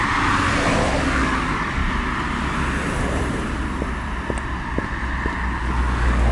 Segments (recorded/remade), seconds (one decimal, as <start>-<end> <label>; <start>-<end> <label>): 0.0-0.9 recorded; 0.9-1.8 remade; 1.8-5.6 recorded; 5.6-6.3 remade